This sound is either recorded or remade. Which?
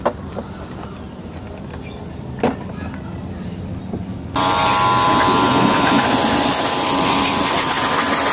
recorded